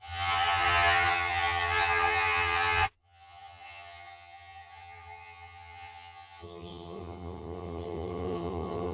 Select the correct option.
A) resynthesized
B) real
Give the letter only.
A